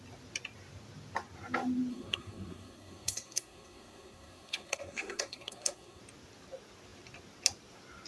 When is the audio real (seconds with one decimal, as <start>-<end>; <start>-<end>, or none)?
0.0-1.9; 6.0-8.1